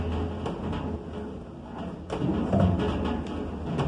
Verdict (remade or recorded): recorded